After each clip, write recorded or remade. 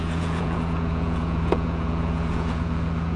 remade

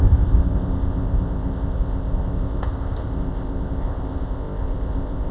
remade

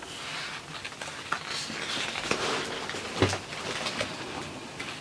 recorded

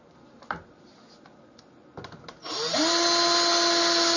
recorded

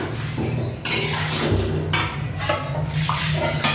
recorded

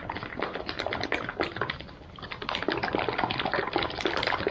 recorded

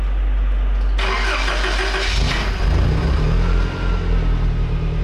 recorded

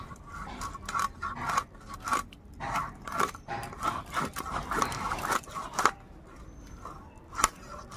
recorded